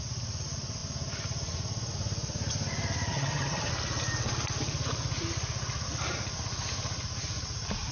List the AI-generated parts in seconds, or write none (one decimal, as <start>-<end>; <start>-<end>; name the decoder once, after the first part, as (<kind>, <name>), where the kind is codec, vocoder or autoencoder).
3.1-3.7 (vocoder, HiFi-GAN)